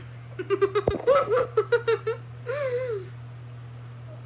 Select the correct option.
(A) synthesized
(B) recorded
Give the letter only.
B